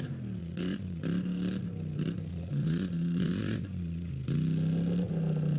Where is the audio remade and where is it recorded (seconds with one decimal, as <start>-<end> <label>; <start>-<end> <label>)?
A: 0.0-0.4 recorded; 0.4-1.0 remade; 1.0-2.3 recorded; 2.3-4.1 remade; 4.1-5.6 recorded